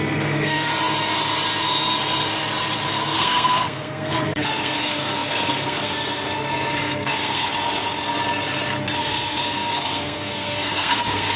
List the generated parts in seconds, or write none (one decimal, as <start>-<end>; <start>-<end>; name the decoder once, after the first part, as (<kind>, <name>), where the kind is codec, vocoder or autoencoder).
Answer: 0.0-0.7 (codec, SNAC); 2.9-7.5; 9.0-11.4